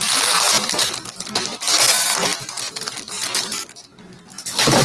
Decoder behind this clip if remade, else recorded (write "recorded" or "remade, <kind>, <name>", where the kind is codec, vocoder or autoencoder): recorded